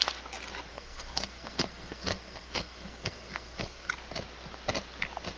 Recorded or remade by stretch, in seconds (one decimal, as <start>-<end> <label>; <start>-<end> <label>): 0.0-0.7 recorded; 0.7-3.9 remade; 3.9-5.4 recorded